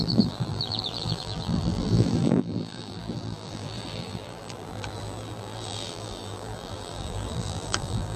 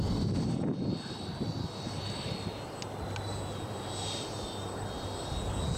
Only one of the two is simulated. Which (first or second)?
first